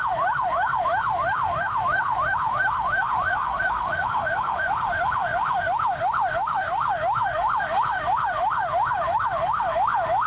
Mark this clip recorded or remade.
remade